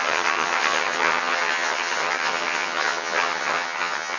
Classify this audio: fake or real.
fake